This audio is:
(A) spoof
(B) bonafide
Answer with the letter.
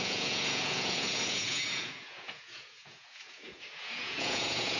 A